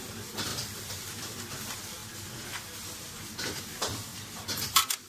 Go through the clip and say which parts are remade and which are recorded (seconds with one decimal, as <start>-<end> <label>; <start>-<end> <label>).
0.0-2.0 remade; 2.0-3.6 recorded; 3.6-4.1 remade; 4.1-4.6 recorded; 4.6-5.1 remade